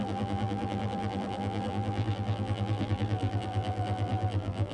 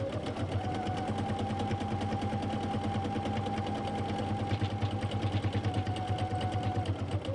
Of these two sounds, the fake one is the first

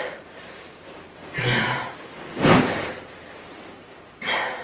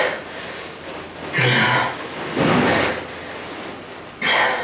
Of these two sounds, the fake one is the first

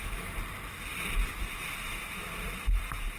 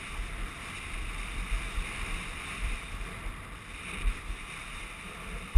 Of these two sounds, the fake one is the second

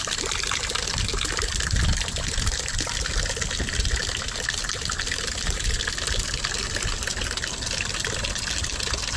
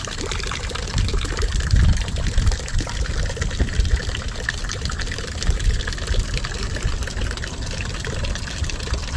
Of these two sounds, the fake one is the second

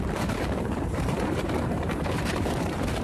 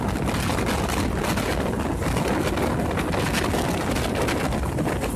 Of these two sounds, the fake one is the first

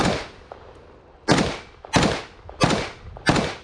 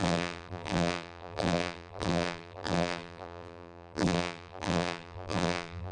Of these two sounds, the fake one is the second